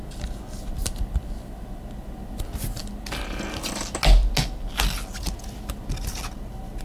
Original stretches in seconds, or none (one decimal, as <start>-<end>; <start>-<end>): 0.0-6.8